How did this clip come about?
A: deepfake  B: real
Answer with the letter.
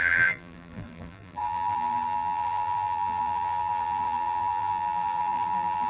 A